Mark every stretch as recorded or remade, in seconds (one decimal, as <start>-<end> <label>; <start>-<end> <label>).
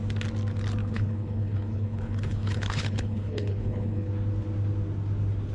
0.0-0.8 recorded; 0.8-4.1 remade; 4.1-5.5 recorded